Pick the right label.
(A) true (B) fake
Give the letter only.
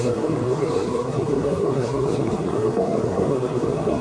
B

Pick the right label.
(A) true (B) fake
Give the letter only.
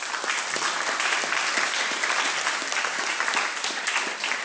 B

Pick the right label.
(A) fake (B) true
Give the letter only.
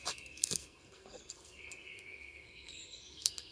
A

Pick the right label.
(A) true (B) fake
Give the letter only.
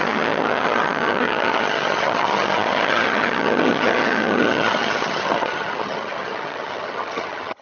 B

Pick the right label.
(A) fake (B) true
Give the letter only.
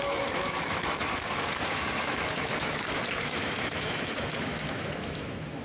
A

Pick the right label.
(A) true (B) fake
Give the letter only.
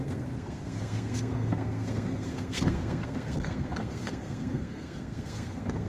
B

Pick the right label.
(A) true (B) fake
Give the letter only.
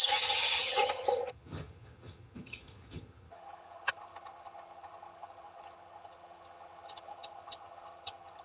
B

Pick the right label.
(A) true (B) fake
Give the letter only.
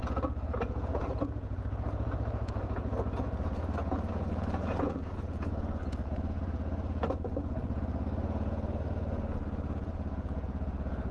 B